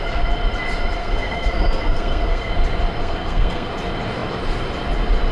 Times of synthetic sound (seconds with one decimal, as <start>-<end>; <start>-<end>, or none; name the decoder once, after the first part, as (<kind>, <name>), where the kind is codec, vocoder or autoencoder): 1.0-2.5 (codec, SNAC); 3.0-3.7